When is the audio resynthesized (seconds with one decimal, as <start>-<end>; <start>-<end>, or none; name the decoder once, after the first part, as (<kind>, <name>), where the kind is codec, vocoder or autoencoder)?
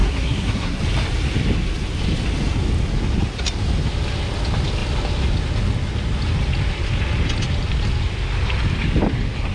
0.0-0.8 (codec, SNAC)